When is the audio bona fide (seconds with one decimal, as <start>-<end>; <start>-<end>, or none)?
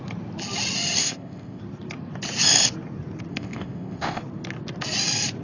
0.0-1.0; 1.6-3.3; 4.2-5.4